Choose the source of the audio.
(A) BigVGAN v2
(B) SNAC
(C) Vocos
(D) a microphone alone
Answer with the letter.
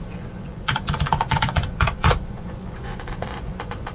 C